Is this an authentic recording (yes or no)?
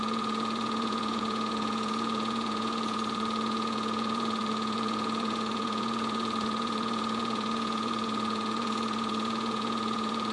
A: no